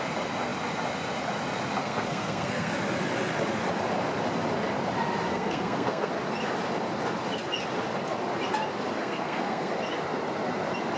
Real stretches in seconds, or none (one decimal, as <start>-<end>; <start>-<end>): 0.0-1.8; 2.7-5.3; 6.1-9.0; 9.7-11.0